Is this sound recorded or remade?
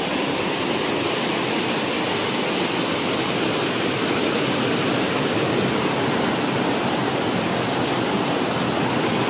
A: recorded